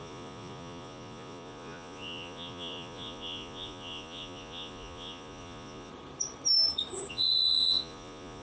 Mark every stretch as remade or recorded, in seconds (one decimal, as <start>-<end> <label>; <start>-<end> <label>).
0.0-5.9 remade; 5.9-7.1 recorded; 7.1-8.4 remade